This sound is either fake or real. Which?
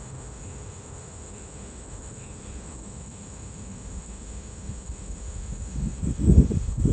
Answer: fake